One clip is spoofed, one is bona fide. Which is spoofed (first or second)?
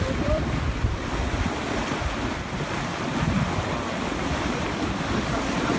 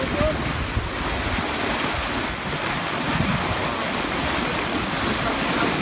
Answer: first